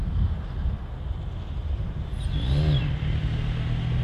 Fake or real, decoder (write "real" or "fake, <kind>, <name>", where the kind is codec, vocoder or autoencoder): real